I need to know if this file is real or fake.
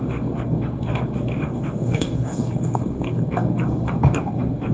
fake